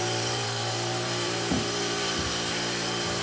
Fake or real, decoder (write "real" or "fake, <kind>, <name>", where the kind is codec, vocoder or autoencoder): fake, vocoder, BigVGAN v2